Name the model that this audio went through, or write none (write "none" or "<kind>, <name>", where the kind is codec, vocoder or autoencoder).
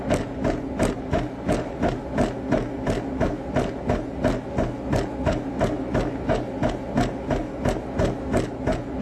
none